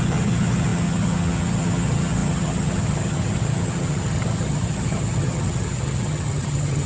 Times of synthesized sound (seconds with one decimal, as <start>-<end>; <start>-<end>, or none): 0.0-6.9